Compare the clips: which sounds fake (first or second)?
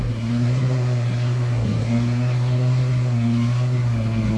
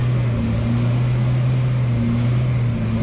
first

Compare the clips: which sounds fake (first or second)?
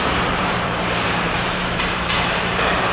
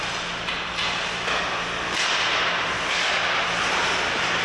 first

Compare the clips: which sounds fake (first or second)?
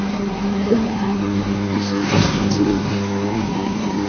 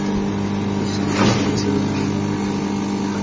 first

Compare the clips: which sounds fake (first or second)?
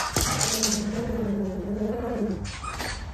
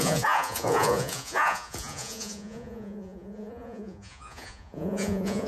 second